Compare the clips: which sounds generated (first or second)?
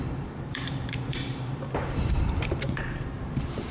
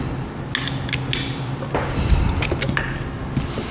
first